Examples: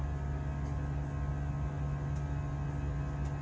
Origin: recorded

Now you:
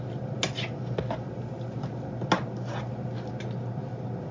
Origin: recorded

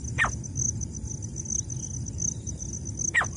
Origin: recorded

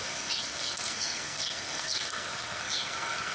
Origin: remade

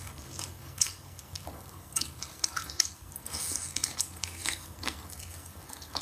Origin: remade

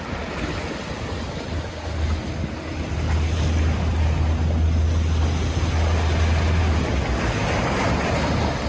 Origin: recorded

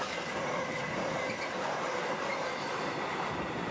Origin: recorded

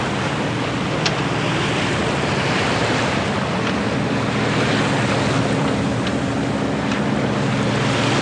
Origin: recorded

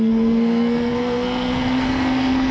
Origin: remade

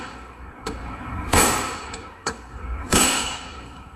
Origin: remade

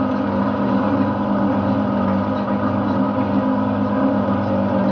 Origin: recorded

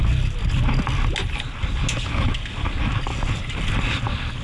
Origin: recorded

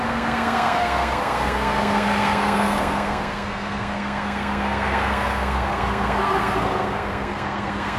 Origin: remade